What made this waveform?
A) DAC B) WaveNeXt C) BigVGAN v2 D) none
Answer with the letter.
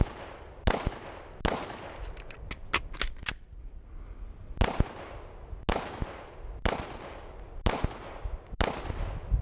D